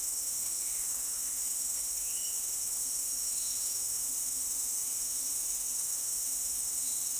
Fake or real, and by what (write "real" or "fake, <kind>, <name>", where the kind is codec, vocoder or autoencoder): fake, autoencoder, DAC-VAE